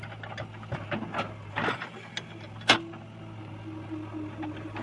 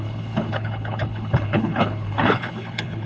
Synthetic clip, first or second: second